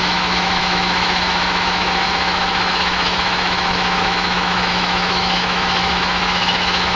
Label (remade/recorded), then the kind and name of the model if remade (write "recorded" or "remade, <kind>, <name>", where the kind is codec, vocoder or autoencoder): remade, autoencoder, DAC-VAE